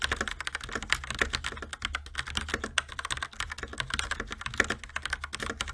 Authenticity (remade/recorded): recorded